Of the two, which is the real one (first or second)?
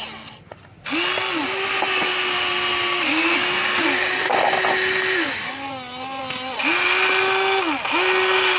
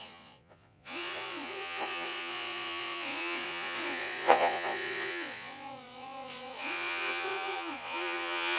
first